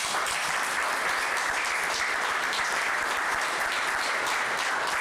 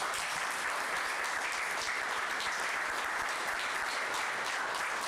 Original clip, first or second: first